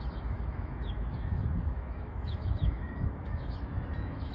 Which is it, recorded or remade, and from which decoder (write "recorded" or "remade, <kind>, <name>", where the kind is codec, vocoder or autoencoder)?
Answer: remade, autoencoder, DAC-VAE